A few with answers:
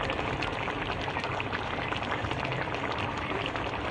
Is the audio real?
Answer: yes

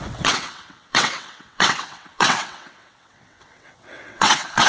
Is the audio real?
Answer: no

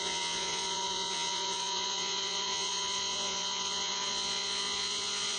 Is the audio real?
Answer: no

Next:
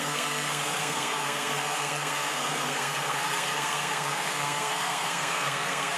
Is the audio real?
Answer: no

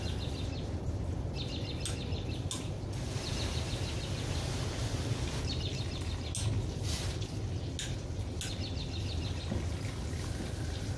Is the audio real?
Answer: yes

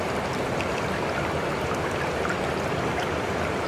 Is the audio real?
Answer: yes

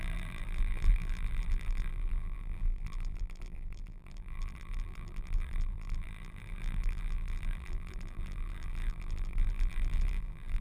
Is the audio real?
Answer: no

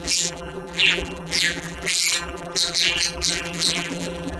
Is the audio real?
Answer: no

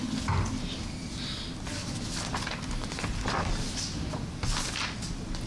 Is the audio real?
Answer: yes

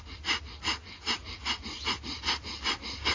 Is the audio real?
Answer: yes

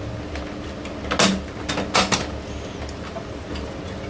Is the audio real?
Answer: yes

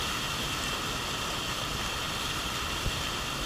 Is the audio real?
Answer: yes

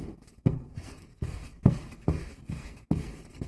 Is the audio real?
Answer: no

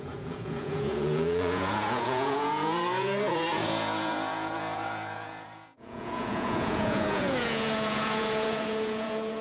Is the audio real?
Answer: no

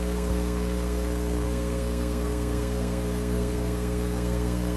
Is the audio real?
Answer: no